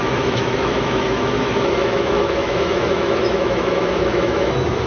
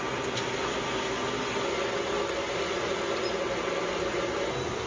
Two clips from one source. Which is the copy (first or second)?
first